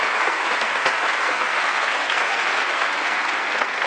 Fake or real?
fake